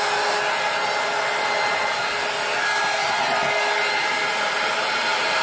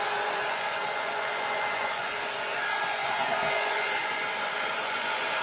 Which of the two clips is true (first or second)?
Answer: first